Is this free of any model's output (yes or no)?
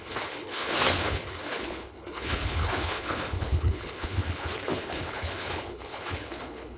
no